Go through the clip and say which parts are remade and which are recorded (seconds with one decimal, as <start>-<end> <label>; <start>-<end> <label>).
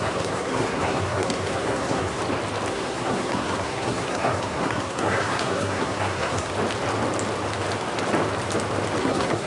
0.0-2.2 remade; 2.2-2.7 recorded; 2.7-6.5 remade; 6.5-9.0 recorded; 9.0-9.5 remade